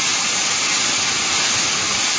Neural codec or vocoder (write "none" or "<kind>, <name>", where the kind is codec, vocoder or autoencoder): none